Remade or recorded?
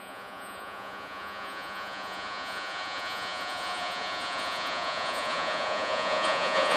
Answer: remade